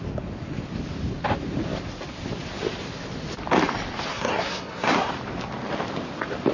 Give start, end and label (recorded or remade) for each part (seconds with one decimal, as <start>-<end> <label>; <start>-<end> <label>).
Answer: 0.0-4.1 recorded; 4.1-5.1 remade; 5.1-6.5 recorded